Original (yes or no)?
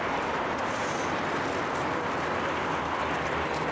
no